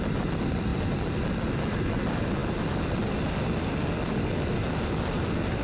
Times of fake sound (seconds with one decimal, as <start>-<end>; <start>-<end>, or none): none

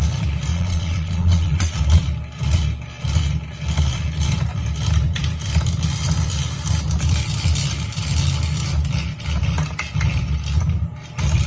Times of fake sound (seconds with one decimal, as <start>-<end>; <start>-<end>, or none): 0.5-1.8

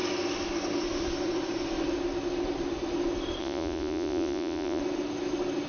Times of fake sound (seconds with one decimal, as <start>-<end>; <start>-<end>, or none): 3.4-4.8

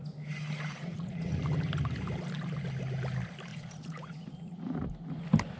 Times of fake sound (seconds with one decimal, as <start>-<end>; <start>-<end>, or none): 0.7-1.4; 3.5-4.9

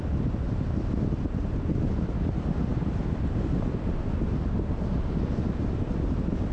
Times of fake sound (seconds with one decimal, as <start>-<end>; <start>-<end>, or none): none

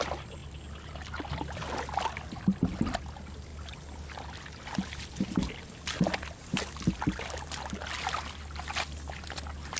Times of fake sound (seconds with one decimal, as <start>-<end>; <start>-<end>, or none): none